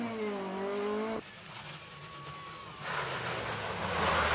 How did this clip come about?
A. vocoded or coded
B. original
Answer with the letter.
B